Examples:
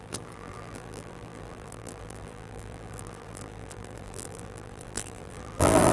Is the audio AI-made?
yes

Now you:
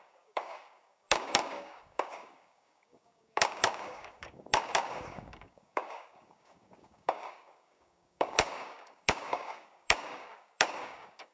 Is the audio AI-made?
yes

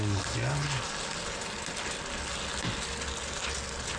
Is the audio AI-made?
no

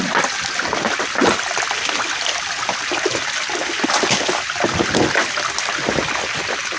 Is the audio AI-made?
no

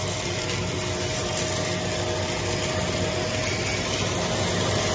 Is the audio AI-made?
no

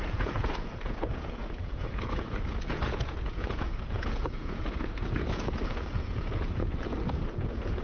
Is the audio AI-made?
yes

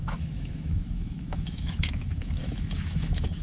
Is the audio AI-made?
yes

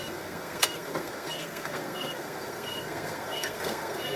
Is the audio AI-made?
yes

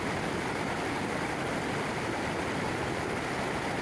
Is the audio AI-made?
no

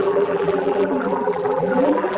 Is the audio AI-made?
yes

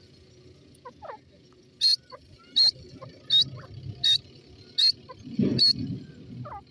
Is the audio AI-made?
no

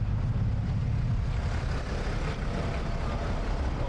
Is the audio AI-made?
no